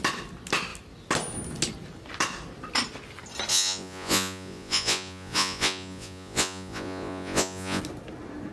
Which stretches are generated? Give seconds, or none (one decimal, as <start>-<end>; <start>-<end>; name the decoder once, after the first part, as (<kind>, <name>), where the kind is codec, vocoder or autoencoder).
3.5-7.8 (vocoder, Vocos)